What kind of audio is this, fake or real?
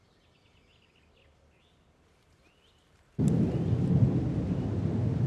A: real